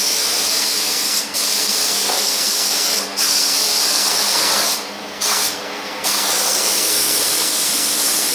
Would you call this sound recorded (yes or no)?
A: no